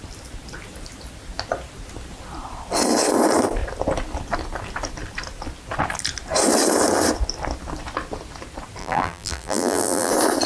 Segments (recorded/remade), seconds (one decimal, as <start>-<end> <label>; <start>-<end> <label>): 0.0-8.8 recorded; 8.8-10.1 remade; 10.1-10.5 recorded